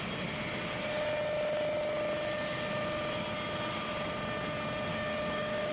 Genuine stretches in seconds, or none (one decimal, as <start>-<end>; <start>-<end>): 0.0-4.9